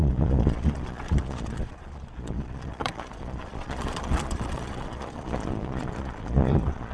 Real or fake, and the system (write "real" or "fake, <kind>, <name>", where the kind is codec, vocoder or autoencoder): fake, vocoder, Vocos